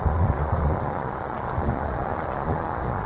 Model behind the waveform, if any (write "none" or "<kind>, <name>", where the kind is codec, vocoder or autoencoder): vocoder, Vocos